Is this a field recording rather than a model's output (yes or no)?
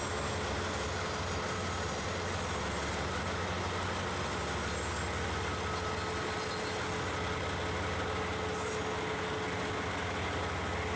yes